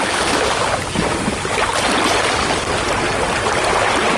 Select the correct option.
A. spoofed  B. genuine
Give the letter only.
B